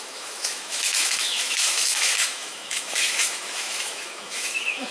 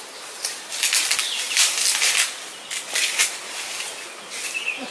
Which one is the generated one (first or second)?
first